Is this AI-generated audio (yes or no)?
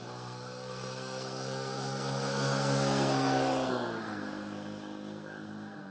yes